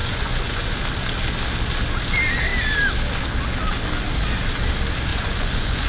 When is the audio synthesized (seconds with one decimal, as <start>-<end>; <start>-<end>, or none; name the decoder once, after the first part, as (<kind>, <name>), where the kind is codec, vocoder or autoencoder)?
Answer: 0.0-0.7 (vocoder, Vocos); 5.1-5.9